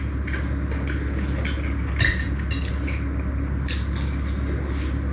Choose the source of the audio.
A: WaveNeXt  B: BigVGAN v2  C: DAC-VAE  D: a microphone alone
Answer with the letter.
D